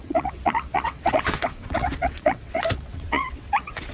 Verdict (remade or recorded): remade